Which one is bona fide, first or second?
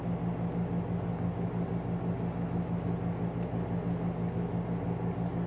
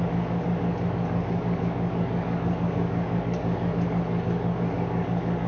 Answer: first